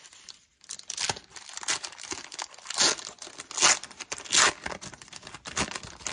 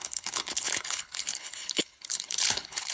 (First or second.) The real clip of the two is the first